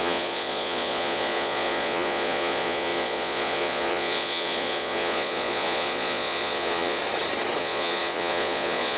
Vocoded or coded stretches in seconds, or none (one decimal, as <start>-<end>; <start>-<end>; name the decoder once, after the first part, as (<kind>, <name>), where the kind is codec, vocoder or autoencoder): 0.0-7.0 (vocoder, Vocos); 7.6-9.0